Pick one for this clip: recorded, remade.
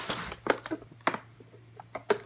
recorded